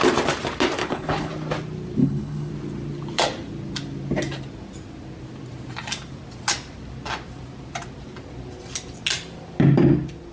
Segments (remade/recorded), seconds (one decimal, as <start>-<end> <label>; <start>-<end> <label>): 0.0-0.8 recorded; 0.8-1.3 remade; 1.3-2.0 recorded; 2.0-2.5 remade; 2.5-10.3 recorded